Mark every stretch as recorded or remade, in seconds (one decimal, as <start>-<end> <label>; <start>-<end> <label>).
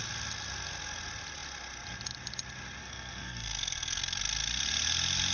0.0-2.8 recorded; 2.8-4.0 remade; 4.0-5.3 recorded